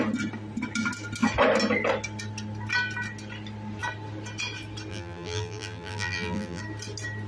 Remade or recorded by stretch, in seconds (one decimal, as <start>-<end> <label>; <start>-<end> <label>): 0.0-4.9 recorded; 4.9-6.6 remade; 6.6-7.3 recorded